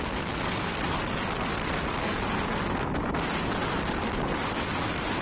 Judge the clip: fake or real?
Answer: fake